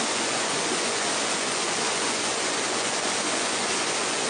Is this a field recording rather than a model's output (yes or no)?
no